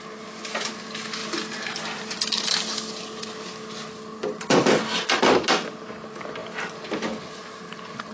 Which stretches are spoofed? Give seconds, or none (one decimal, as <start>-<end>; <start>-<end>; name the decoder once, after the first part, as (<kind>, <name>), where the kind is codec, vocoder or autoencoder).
none